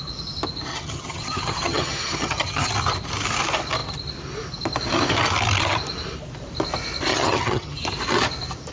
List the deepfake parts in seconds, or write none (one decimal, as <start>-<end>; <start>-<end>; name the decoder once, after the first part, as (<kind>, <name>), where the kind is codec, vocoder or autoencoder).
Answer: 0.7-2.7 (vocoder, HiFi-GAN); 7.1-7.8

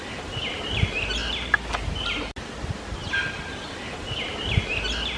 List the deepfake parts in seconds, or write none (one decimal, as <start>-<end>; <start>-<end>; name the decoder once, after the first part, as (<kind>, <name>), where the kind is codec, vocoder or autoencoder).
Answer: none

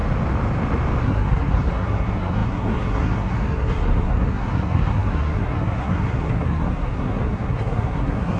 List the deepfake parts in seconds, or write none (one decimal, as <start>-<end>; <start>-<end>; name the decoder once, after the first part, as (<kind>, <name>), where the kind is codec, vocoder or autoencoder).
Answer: 1.0-8.4 (codec, SNAC)